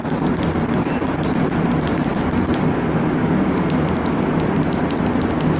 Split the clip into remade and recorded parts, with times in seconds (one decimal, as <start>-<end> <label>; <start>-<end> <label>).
0.0-5.6 recorded